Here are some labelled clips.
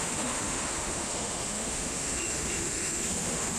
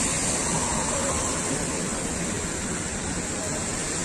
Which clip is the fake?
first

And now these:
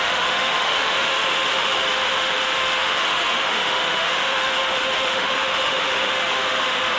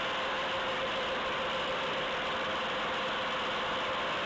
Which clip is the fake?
first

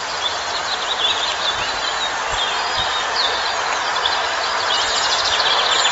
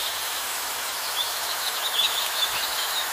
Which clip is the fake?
second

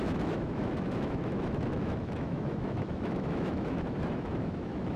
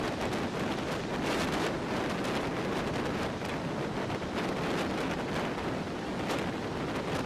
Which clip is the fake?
first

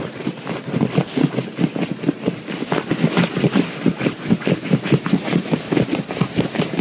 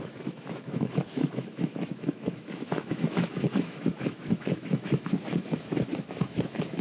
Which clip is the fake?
second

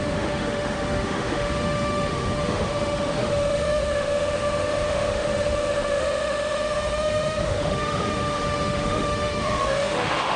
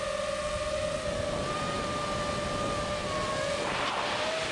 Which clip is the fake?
first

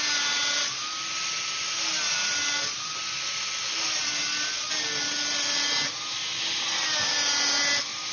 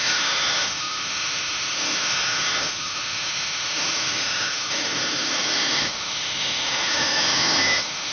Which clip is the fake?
second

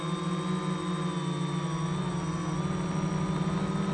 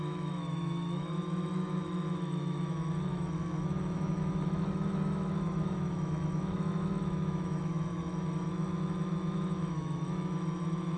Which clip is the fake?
second